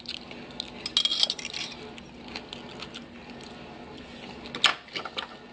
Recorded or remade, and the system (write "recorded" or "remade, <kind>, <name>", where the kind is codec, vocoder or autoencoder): recorded